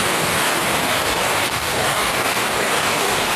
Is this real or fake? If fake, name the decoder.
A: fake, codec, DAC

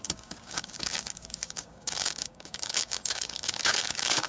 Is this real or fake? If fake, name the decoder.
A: fake, codec, DAC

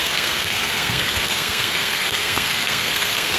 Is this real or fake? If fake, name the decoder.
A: fake, codec, SNAC